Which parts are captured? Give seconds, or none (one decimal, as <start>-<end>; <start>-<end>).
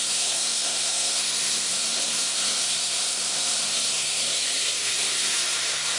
none